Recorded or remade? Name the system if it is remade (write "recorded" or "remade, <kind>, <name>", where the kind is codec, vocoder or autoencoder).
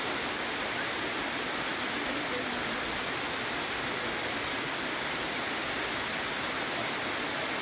recorded